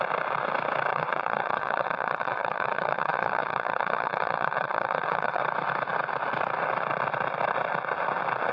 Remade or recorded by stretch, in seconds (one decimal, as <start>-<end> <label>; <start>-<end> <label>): 0.0-0.9 recorded; 0.9-5.4 remade; 5.4-8.5 recorded